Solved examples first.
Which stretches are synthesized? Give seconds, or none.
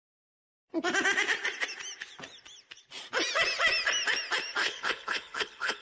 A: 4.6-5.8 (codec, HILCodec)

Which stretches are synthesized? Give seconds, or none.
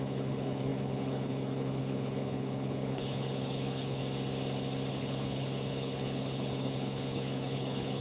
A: 0.0-4.0 (codec, HILCodec); 4.9-8.0